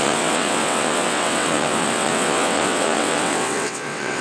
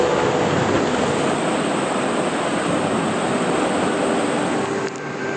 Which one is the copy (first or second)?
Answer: first